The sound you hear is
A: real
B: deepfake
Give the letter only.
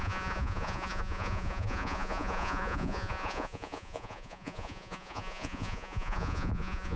B